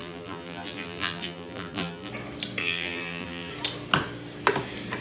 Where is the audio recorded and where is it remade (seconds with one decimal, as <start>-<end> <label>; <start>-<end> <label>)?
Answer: 0.0-2.1 remade; 2.1-2.6 recorded; 2.6-3.5 remade; 3.5-5.0 recorded